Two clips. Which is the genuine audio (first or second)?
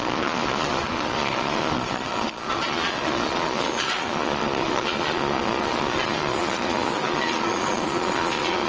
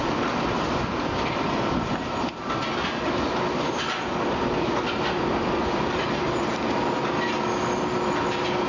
second